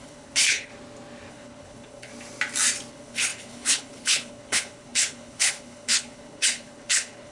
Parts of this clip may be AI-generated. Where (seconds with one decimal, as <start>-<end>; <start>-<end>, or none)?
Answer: 0.0-0.7; 1.3-2.1; 2.9-7.3